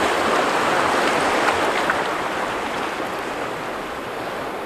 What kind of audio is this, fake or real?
real